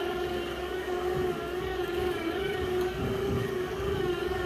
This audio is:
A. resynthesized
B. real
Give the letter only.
A